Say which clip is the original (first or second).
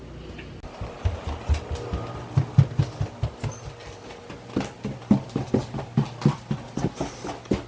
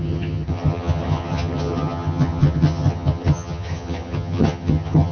first